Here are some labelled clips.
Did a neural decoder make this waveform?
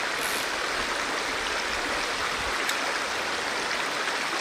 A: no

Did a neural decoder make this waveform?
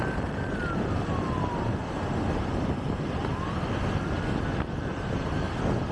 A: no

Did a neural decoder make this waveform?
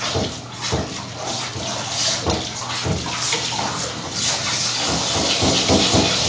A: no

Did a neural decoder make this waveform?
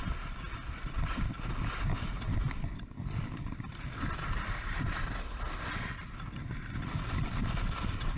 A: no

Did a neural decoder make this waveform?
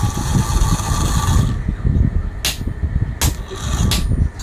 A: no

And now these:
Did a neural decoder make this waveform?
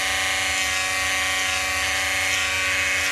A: no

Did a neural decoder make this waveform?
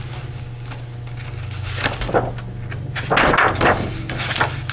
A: no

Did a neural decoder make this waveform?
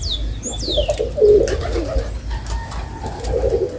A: no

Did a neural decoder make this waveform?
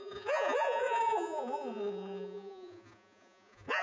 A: yes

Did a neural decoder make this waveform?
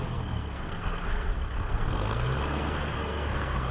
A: yes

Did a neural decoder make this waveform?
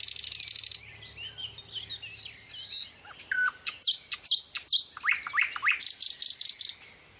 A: no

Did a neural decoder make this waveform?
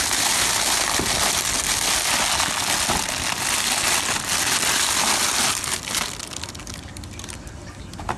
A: no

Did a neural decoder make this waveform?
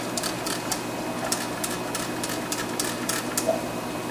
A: no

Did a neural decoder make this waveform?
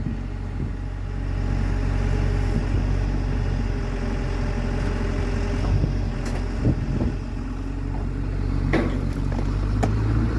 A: no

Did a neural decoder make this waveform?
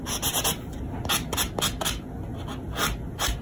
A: no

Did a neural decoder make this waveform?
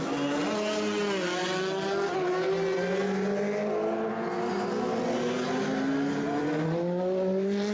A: no